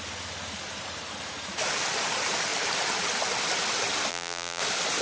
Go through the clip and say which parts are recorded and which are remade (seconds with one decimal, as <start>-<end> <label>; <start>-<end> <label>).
0.0-4.1 recorded; 4.1-4.6 remade; 4.6-5.0 recorded